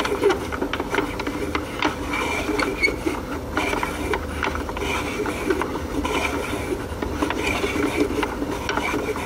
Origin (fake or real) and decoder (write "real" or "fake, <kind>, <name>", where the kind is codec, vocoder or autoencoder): real